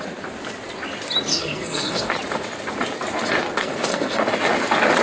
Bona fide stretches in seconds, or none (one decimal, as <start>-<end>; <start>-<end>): 0.0-1.3; 2.1-3.6; 4.2-5.0